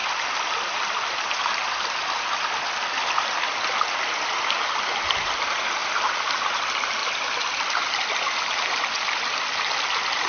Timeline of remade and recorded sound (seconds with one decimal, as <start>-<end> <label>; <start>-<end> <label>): 0.0-10.3 recorded

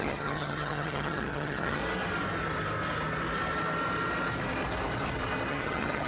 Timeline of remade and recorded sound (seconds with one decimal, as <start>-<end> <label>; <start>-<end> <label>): 0.0-1.8 remade; 1.8-5.5 recorded; 5.5-6.1 remade

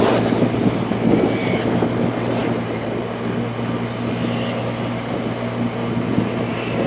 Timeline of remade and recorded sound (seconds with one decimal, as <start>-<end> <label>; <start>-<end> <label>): 0.0-6.9 recorded

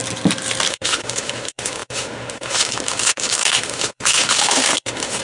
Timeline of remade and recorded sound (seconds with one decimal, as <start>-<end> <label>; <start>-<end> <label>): 0.0-0.7 recorded; 0.7-5.2 remade

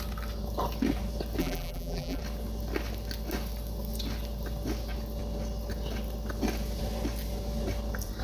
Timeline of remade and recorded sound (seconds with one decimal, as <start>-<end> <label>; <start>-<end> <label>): 0.0-1.4 recorded; 1.4-2.2 remade; 2.2-8.2 recorded

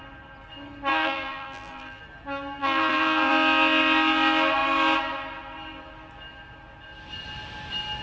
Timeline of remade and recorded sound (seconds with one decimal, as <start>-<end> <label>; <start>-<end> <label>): 0.0-0.9 recorded; 0.9-2.0 remade; 2.0-2.6 recorded; 2.6-3.3 remade; 3.3-8.0 recorded